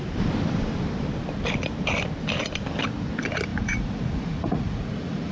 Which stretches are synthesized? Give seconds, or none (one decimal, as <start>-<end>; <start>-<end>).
3.5-5.3